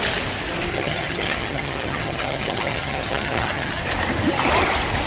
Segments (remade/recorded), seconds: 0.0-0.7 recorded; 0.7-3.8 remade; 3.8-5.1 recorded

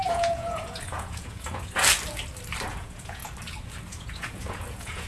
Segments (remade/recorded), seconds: 0.0-1.8 remade; 1.8-2.7 recorded; 2.7-3.2 remade; 3.2-3.9 recorded; 3.9-5.1 remade